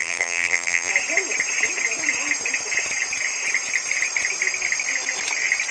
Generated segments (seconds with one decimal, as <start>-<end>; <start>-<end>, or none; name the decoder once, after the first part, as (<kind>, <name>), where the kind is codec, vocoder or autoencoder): 0.0-0.9 (vocoder, BigVGAN v2)